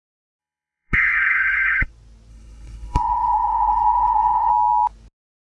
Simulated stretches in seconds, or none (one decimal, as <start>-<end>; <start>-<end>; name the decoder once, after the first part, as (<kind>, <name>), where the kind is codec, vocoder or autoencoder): 0.4-1.9 (codec, HILCodec); 2.3-4.5